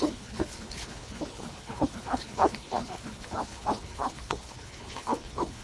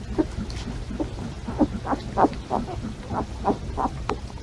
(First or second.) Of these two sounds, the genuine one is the second